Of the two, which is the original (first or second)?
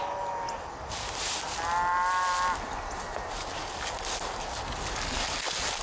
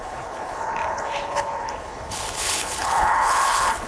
first